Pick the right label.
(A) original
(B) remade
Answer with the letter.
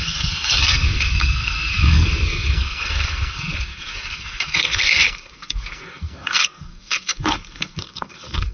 B